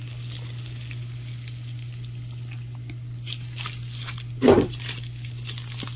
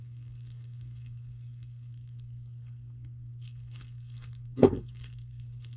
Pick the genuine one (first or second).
first